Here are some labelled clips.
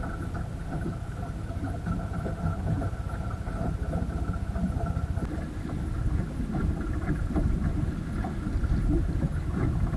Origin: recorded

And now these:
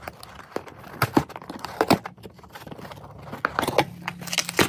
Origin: recorded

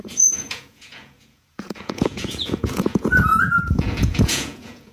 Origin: remade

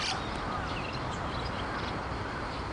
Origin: recorded